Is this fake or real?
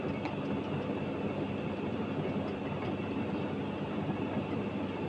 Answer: real